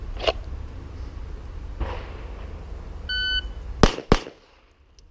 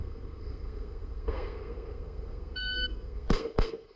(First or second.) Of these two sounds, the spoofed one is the second